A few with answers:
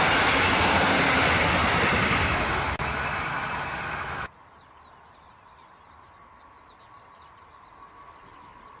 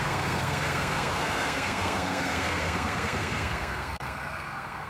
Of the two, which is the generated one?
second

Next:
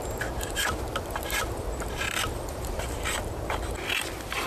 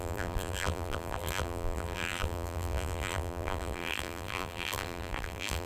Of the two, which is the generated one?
second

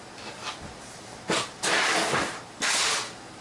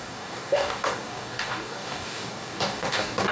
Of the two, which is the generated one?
second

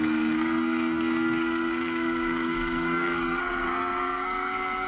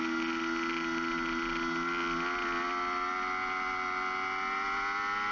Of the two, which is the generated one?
first